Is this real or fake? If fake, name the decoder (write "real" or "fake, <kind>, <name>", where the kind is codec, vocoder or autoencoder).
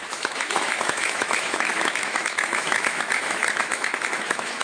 fake, autoencoder, DAC-VAE